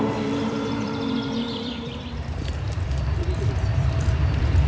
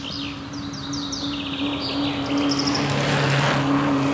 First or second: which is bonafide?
second